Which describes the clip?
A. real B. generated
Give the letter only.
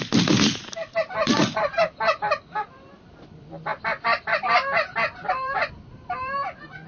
B